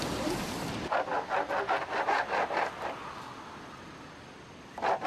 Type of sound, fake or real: real